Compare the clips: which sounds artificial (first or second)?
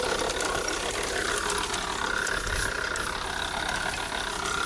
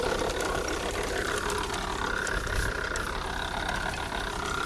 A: second